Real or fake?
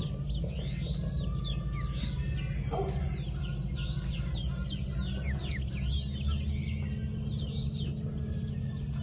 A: real